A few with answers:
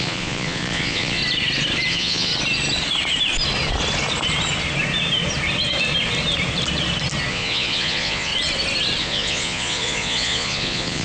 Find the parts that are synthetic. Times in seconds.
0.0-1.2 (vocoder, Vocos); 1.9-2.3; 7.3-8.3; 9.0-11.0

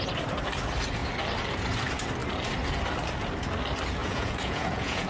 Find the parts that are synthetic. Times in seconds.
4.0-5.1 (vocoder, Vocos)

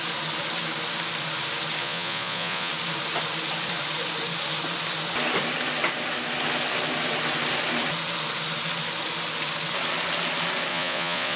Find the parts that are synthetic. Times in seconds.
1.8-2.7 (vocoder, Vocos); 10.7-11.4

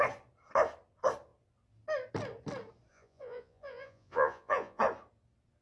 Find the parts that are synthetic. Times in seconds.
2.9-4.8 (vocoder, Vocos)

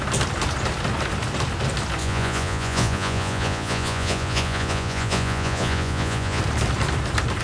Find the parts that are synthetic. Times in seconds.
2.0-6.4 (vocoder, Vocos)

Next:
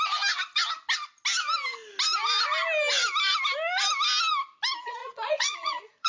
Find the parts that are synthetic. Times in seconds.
5.0-6.1 (vocoder, Vocos)